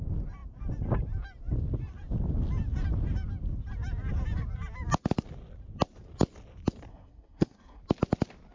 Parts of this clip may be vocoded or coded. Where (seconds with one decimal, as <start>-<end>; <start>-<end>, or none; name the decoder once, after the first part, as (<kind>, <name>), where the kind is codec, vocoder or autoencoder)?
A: 6.9-7.8 (codec, SNAC)